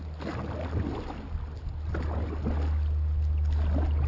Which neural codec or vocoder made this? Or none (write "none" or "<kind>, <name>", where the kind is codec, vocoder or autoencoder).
none